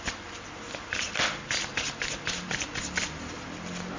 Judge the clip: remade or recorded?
recorded